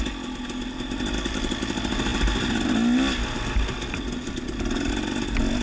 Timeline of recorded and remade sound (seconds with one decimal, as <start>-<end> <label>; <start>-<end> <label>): 0.0-5.6 recorded